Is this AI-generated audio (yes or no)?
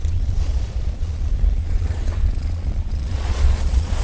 yes